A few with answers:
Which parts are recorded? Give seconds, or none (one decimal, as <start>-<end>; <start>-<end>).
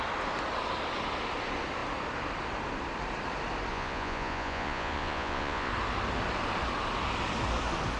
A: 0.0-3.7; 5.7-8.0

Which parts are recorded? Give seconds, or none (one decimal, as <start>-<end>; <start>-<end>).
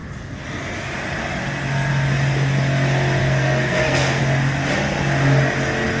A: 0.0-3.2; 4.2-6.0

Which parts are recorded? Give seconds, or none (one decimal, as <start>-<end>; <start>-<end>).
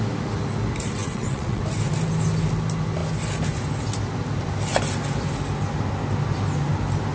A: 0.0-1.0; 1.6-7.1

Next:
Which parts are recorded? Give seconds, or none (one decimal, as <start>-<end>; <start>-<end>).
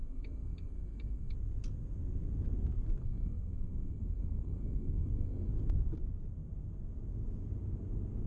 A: 1.3-3.0; 5.5-8.3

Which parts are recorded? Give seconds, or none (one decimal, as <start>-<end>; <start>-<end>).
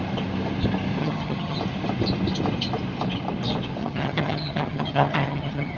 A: 0.0-1.0; 1.6-3.8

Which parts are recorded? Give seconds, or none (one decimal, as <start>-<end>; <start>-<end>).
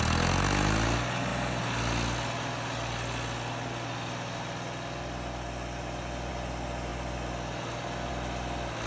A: 0.0-8.9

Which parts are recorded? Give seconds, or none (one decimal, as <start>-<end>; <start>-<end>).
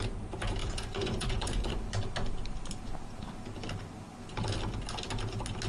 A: 0.0-0.6; 1.7-5.7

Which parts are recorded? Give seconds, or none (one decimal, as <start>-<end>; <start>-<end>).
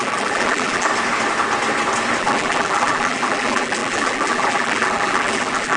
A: 0.9-2.2